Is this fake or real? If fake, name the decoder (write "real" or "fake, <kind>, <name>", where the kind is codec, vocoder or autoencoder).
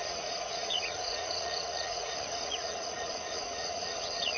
fake, vocoder, Vocos